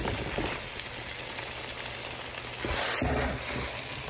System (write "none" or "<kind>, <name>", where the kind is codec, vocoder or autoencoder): none